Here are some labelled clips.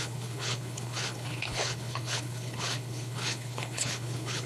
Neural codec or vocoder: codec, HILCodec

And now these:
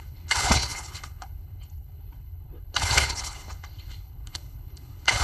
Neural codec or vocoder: codec, HILCodec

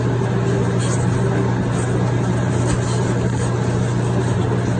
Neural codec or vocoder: none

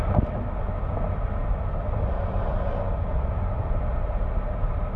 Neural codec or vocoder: none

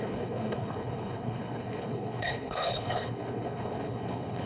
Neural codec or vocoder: codec, HILCodec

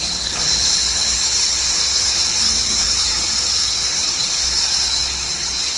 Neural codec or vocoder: codec, HILCodec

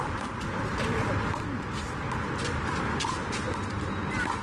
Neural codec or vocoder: none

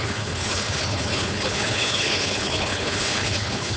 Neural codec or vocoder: codec, HILCodec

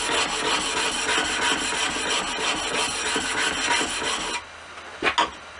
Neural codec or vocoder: none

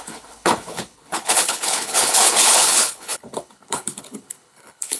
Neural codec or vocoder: codec, HILCodec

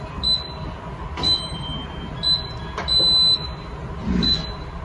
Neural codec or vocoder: none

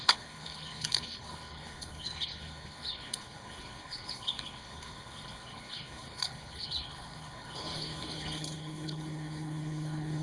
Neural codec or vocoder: codec, HILCodec